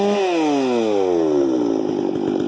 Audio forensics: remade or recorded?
recorded